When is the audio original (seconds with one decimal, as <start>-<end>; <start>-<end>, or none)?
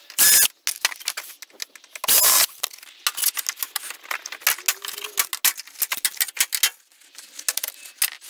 0.0-8.3